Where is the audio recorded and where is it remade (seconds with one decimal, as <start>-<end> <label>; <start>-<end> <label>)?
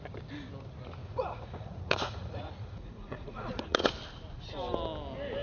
0.0-1.0 recorded; 1.0-3.9 remade; 3.9-5.4 recorded